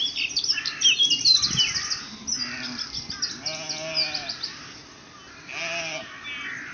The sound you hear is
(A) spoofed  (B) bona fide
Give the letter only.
B